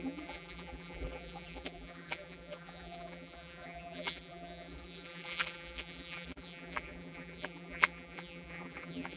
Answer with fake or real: fake